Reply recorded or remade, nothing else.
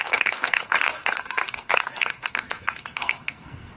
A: remade